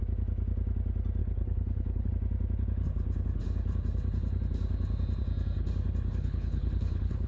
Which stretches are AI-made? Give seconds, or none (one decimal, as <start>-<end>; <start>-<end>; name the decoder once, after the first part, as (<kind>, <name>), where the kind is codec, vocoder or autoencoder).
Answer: 1.2-2.1 (codec, HILCodec); 6.1-7.3